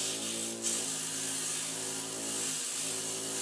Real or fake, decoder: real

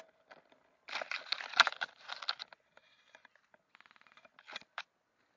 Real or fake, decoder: real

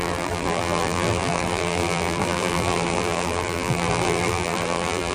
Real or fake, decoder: fake, vocoder, BigVGAN v2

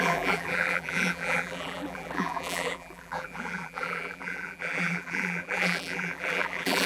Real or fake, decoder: fake, vocoder, BigVGAN v2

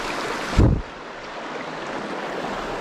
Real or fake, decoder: real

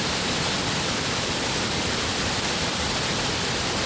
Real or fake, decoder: fake, vocoder, BigVGAN v2